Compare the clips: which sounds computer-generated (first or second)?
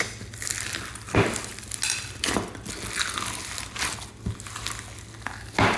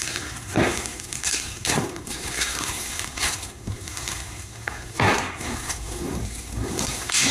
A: second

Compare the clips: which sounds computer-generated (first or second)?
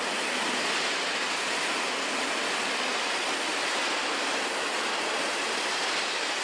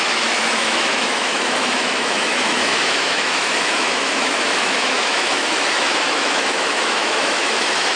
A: second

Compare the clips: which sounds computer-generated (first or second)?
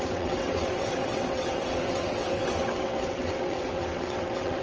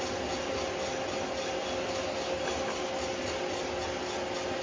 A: first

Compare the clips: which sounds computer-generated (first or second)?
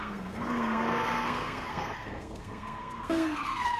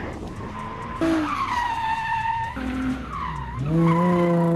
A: first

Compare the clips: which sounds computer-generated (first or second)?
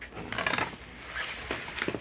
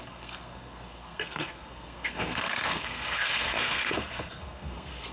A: second